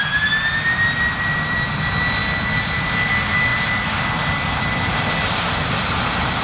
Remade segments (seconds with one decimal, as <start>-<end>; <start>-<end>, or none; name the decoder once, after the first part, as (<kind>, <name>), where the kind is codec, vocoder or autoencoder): none